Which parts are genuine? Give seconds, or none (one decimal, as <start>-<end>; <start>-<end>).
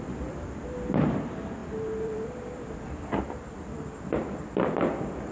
none